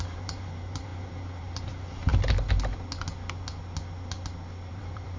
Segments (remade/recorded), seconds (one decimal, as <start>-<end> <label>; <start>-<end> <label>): 0.0-2.1 remade; 2.1-4.7 recorded; 4.7-5.2 remade